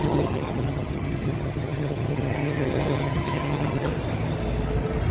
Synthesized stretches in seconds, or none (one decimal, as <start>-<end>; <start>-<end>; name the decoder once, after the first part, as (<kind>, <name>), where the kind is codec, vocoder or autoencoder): 0.0-3.9 (vocoder, HiFi-GAN)